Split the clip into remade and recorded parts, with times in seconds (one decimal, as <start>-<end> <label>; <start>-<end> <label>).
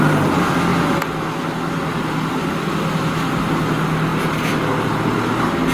0.0-5.7 recorded